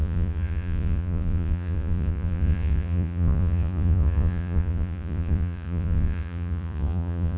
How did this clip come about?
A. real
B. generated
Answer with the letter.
B